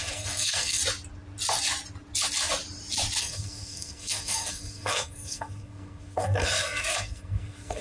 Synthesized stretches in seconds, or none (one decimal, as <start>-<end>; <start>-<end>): 0.0-0.8; 3.2-7.8